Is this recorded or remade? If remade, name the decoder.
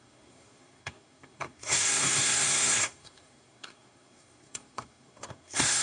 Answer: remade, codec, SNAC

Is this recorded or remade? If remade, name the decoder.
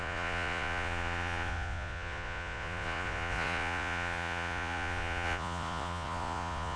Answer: remade, vocoder, Vocos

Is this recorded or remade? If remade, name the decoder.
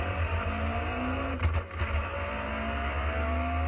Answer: recorded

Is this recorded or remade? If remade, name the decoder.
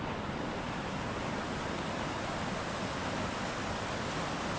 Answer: recorded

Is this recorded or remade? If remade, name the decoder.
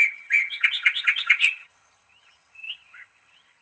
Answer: remade, vocoder, HiFi-GAN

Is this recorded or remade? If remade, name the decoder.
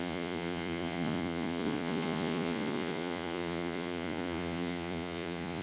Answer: remade, vocoder, Vocos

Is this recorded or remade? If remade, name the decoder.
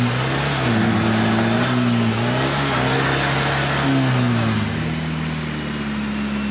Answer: recorded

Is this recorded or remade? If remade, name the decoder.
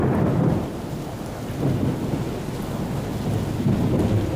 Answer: recorded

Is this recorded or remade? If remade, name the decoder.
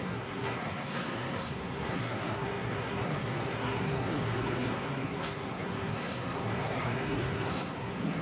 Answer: remade, codec, SNAC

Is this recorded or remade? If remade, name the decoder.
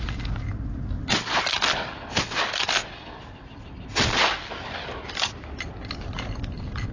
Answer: recorded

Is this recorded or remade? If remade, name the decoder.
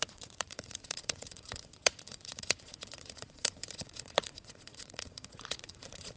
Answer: remade, vocoder, Vocos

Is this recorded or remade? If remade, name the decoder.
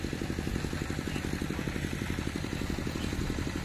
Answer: recorded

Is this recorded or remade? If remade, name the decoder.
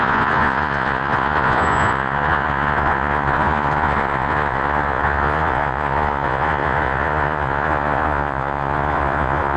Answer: remade, vocoder, Vocos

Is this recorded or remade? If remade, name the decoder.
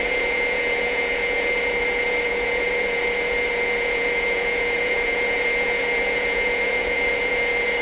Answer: remade, vocoder, Vocos